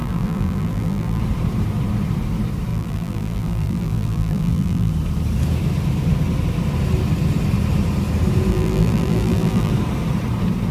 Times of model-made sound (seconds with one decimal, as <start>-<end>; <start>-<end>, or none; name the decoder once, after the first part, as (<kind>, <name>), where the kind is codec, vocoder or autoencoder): 0.0-1.2 (vocoder, BigVGAN v2); 2.7-4.9; 8.5-9.7